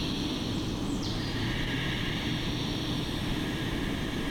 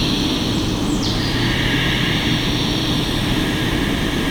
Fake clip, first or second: first